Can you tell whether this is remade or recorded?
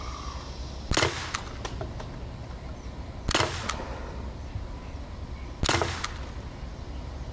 recorded